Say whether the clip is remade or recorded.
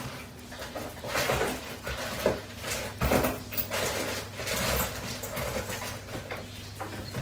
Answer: recorded